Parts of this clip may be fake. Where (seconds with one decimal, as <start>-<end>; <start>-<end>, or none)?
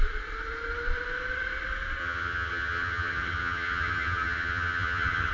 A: 2.0-5.3